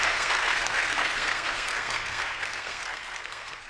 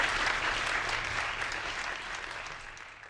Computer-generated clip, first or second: first